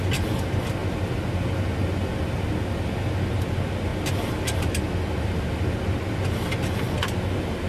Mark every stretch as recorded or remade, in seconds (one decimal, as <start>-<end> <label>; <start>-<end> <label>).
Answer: 0.0-7.7 recorded